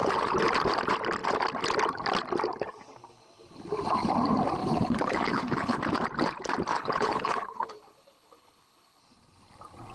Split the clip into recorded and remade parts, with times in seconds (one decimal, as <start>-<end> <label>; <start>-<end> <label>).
0.0-4.6 recorded; 4.6-5.8 remade; 5.8-6.7 recorded; 6.7-9.0 remade; 9.0-9.9 recorded